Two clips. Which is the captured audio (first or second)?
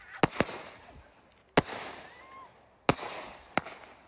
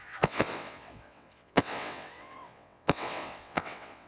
first